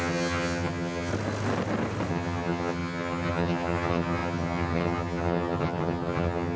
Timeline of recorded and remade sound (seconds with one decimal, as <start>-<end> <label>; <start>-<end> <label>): 0.0-1.1 remade; 1.1-2.1 recorded; 2.1-6.6 remade